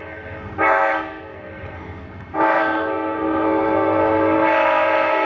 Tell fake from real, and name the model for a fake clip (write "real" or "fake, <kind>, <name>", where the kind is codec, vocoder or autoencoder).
fake, codec, SNAC